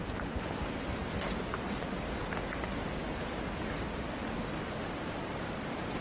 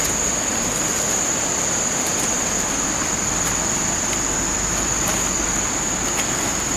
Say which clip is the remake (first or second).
first